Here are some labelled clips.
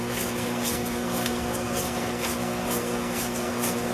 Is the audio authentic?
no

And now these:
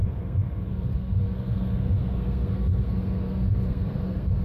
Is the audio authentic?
no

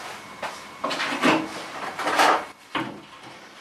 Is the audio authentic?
yes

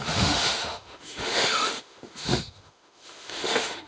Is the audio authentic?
no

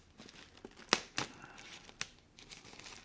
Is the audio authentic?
yes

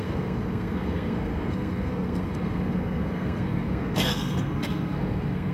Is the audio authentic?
no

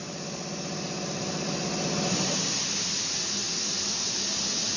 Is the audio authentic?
yes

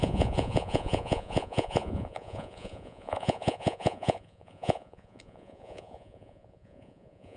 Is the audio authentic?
no